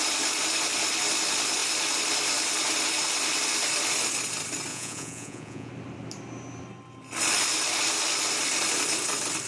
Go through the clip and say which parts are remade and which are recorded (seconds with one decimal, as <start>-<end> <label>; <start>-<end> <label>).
0.0-4.7 recorded; 4.7-5.7 remade; 5.7-9.5 recorded